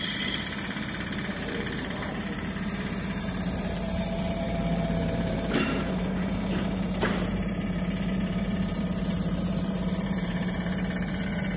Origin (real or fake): fake